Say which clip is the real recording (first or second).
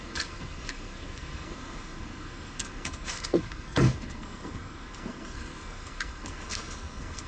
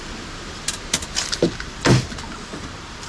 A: second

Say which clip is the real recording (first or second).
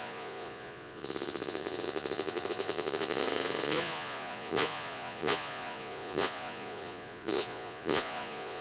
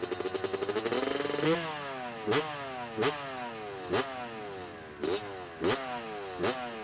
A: second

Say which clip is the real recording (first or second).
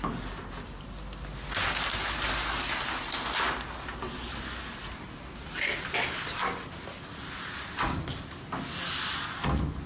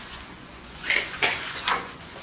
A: first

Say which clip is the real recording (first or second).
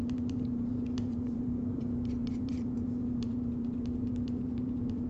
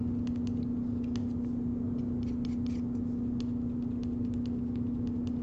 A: second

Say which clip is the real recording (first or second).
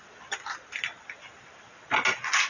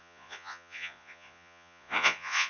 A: first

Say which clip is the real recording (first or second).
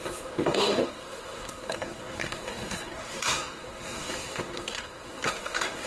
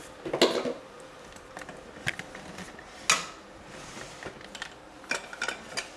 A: second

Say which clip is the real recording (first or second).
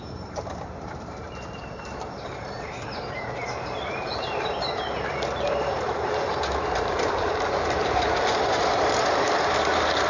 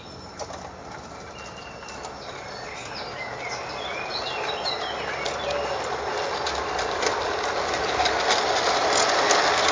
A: second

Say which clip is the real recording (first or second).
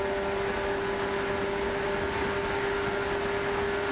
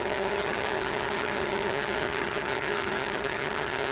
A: first